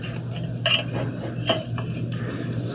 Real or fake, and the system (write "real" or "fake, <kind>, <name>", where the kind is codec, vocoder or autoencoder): real